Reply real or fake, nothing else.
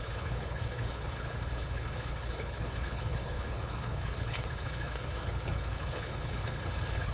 fake